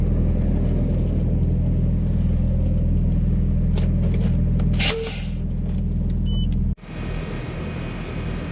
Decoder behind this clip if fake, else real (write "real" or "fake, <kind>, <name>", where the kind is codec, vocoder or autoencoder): real